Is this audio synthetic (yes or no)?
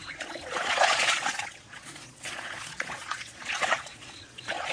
yes